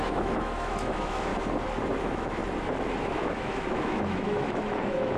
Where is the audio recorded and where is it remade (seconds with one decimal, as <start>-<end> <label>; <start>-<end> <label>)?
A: 0.0-1.3 remade; 1.3-2.0 recorded; 2.0-2.4 remade; 2.4-3.0 recorded; 3.0-5.2 remade